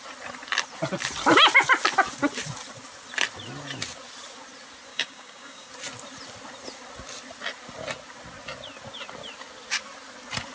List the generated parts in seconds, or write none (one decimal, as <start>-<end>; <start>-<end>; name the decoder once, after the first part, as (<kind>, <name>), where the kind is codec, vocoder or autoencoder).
4.9-5.7 (codec, DAC)